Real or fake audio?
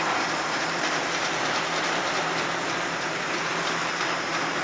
fake